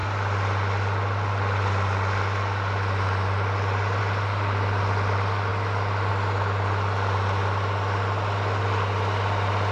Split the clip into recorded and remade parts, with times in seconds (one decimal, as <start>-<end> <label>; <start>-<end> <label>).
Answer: 0.0-9.7 recorded

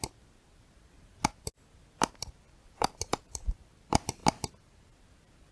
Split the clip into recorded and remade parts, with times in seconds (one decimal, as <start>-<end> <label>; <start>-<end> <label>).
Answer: 0.0-5.5 recorded

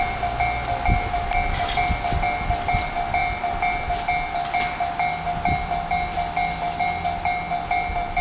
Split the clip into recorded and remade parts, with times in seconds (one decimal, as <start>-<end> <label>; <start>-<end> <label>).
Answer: 0.0-8.2 recorded